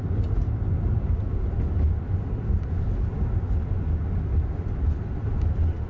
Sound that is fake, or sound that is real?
real